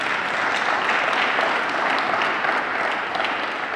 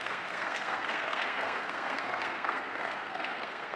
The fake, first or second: second